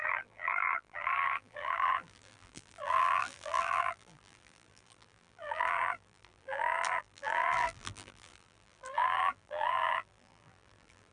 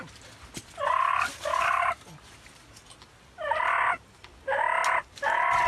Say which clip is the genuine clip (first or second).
second